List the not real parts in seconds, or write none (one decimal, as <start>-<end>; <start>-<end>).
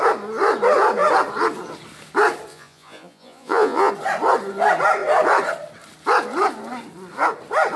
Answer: 2.5-3.9